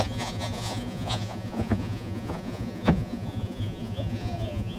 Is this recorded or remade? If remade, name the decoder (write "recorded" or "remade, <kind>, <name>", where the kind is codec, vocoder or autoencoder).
remade, vocoder, Vocos